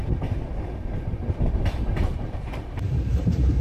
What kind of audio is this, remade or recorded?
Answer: remade